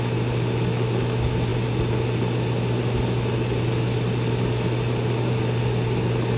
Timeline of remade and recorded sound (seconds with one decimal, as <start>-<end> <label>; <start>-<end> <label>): 0.0-6.4 recorded